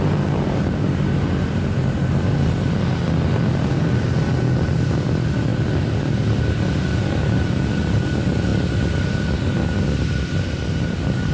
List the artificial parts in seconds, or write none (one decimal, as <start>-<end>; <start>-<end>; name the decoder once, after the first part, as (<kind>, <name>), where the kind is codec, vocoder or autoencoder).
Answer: none